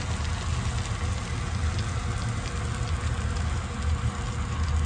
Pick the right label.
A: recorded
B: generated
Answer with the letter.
A